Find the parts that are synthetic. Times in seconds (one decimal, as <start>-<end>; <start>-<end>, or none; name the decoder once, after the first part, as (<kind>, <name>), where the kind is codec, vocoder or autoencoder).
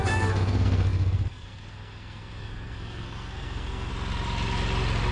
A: 0.0-3.9 (codec, SNAC)